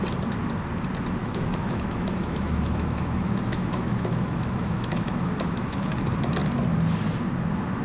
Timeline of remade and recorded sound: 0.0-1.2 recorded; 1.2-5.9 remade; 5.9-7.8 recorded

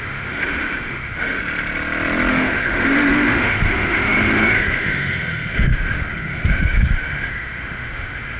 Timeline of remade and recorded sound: 0.0-1.4 remade; 1.4-2.3 recorded; 2.3-8.4 remade

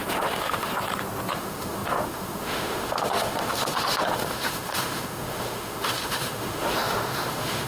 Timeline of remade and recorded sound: 0.0-0.7 remade; 0.7-1.3 recorded; 1.3-7.7 remade

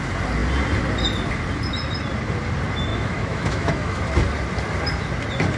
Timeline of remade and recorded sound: 0.0-2.9 recorded; 2.9-4.0 remade; 4.0-5.6 recorded

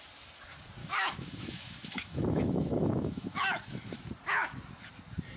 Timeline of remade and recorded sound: 0.0-0.8 recorded; 0.8-4.0 remade; 4.0-5.4 recorded